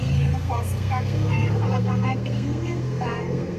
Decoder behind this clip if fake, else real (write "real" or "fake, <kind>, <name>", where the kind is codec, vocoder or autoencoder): fake, codec, SNAC